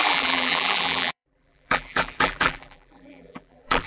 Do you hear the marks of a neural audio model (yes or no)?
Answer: yes